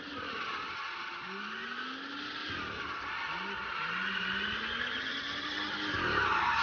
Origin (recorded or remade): recorded